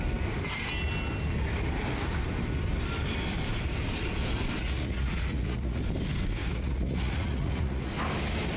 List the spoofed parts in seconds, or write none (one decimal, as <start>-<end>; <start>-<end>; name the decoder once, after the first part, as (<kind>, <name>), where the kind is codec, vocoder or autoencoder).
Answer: 4.6-5.8 (vocoder, Vocos); 6.4-7.9